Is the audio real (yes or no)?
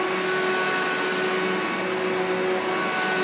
yes